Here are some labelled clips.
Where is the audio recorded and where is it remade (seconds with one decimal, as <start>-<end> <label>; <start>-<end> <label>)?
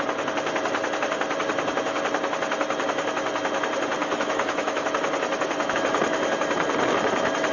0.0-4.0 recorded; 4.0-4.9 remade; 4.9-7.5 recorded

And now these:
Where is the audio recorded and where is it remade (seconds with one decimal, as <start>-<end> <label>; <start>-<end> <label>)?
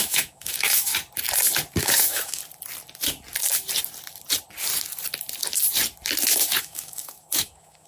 0.0-0.9 remade; 0.9-1.8 recorded; 1.8-2.4 remade; 2.4-6.6 recorded; 6.6-7.9 remade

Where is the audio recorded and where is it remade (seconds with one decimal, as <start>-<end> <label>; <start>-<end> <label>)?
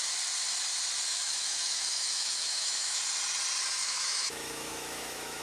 0.0-1.1 recorded; 1.1-3.0 remade; 3.0-3.8 recorded; 3.8-5.4 remade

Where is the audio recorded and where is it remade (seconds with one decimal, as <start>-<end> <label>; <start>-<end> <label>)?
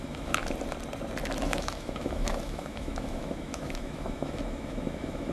0.0-0.4 remade; 0.4-1.2 recorded; 1.2-5.3 remade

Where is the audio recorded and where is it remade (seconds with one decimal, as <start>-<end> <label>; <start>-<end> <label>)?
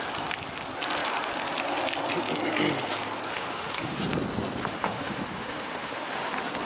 0.0-3.3 recorded; 3.3-4.0 remade; 4.0-4.6 recorded; 4.6-6.3 remade; 6.3-6.7 recorded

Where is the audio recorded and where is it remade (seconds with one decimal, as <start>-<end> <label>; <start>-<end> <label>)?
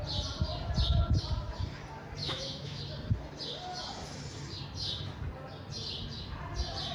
0.0-2.2 recorded; 2.2-2.8 remade; 2.8-6.9 recorded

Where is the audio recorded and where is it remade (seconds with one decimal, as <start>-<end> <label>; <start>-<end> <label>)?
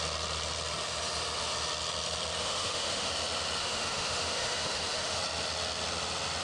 0.0-2.4 recorded; 2.4-3.1 remade; 3.1-3.6 recorded; 3.6-5.2 remade; 5.2-6.4 recorded